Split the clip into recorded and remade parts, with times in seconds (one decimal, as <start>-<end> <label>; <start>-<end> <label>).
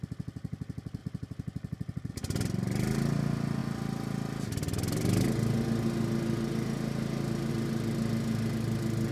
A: 0.0-9.1 recorded